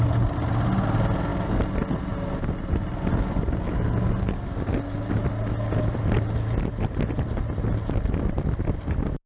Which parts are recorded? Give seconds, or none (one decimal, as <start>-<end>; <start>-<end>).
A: 0.0-9.3